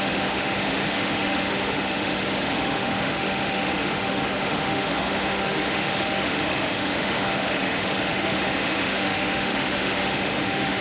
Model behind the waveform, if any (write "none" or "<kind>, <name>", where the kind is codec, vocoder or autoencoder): autoencoder, DAC-VAE